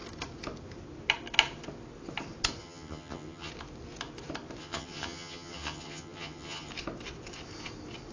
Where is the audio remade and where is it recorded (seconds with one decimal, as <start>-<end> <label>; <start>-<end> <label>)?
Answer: 0.0-2.6 recorded; 2.6-3.5 remade; 3.5-4.6 recorded; 4.6-6.7 remade; 6.7-8.1 recorded